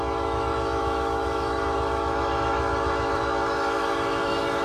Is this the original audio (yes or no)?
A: no